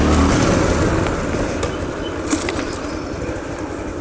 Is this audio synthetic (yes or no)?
no